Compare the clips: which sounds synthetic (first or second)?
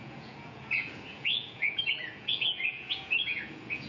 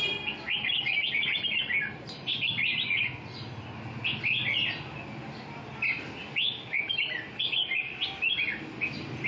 first